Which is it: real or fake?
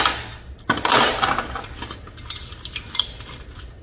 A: real